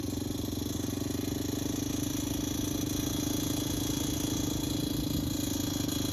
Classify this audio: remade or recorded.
recorded